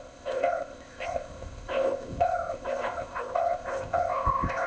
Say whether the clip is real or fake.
fake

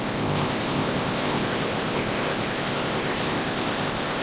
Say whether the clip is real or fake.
fake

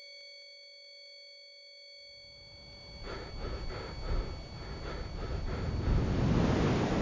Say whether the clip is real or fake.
real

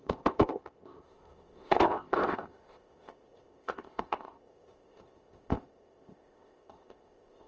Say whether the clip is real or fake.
fake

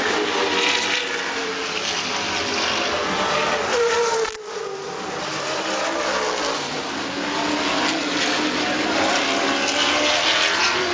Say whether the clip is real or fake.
real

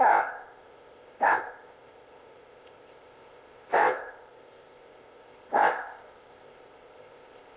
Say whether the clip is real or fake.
fake